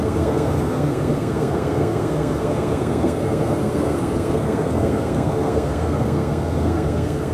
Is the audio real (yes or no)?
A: no